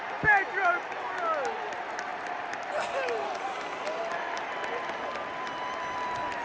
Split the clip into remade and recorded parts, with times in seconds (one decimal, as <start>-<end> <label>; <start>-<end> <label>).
0.0-2.1 recorded; 2.1-4.0 remade; 4.0-6.4 recorded